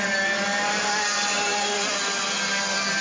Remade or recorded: recorded